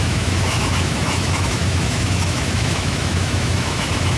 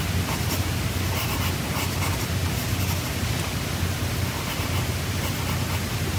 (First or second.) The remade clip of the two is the first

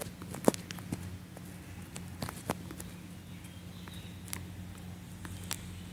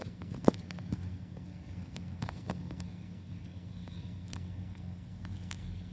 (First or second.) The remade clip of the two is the second